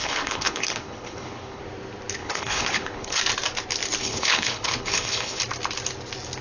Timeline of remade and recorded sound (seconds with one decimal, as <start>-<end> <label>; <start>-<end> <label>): 0.0-1.6 remade; 1.6-2.2 recorded; 2.2-3.2 remade; 3.2-4.0 recorded; 4.0-5.4 remade; 5.4-6.4 recorded